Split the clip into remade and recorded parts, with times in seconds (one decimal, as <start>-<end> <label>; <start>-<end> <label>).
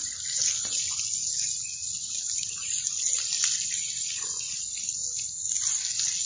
0.0-6.3 recorded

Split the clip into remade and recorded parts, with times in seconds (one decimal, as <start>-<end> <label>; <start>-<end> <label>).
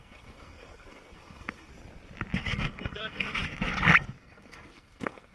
0.0-1.7 remade; 1.7-2.4 recorded; 2.4-3.4 remade; 3.4-4.2 recorded; 4.2-5.3 remade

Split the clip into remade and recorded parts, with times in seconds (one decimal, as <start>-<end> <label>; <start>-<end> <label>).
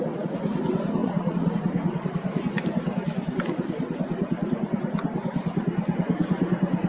0.0-1.0 recorded; 1.0-1.5 remade; 1.5-6.9 recorded